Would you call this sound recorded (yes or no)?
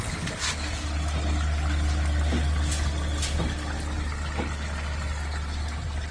yes